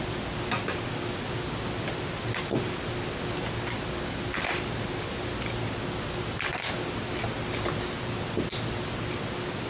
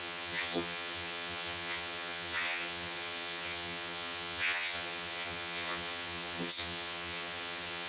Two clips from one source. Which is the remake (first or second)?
second